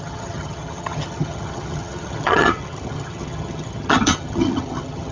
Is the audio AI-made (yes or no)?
yes